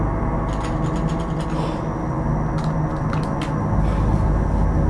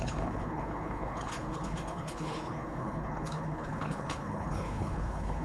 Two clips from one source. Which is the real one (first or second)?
first